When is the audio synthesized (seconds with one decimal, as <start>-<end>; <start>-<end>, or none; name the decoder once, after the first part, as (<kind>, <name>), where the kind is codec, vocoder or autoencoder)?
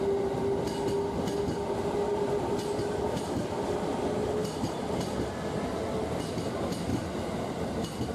none